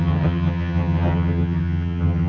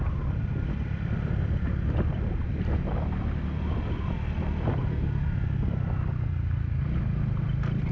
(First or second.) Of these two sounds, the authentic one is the second